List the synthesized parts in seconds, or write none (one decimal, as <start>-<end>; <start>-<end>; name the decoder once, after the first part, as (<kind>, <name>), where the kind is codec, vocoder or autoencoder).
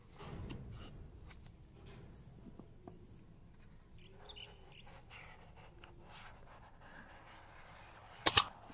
none